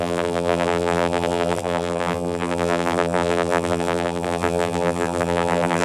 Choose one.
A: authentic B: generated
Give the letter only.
B